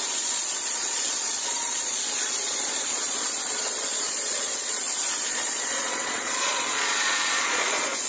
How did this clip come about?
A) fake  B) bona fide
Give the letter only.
A